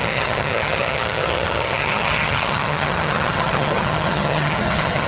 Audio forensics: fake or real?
fake